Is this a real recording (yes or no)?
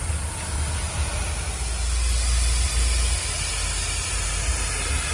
yes